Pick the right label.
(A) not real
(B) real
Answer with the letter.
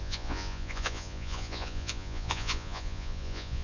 A